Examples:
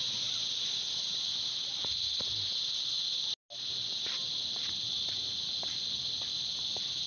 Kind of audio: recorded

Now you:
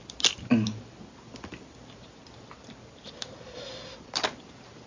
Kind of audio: recorded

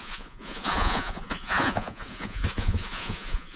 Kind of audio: remade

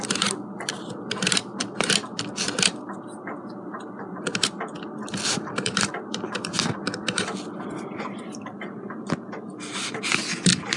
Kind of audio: remade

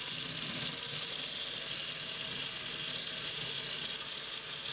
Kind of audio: recorded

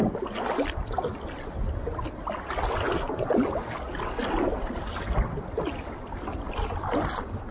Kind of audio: recorded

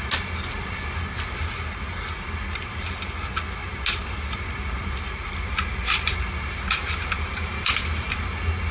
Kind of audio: recorded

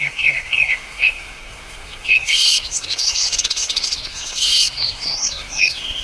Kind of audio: remade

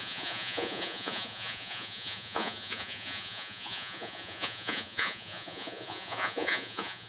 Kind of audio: remade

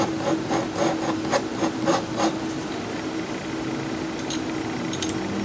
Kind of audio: remade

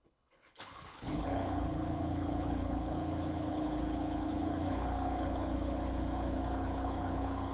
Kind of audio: remade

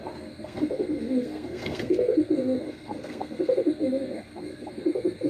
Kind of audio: remade